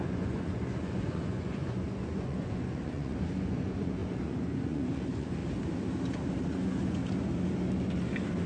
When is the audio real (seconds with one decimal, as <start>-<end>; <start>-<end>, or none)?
5.4-6.4; 7.0-8.5